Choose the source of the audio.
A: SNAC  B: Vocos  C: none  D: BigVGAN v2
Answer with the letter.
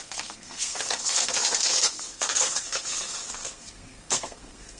A